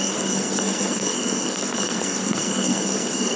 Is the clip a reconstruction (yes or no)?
yes